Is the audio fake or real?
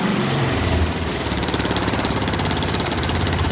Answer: fake